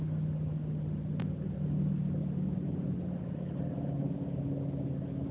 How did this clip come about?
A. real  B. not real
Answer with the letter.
A